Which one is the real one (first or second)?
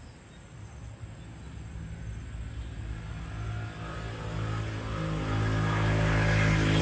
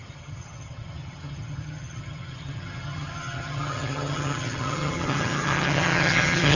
first